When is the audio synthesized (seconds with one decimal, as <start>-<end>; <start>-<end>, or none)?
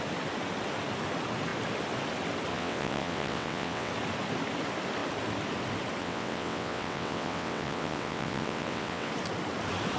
2.5-3.9; 6.0-9.1